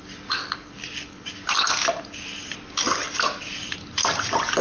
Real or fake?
real